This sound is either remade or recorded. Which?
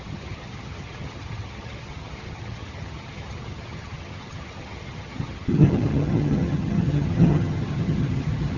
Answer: remade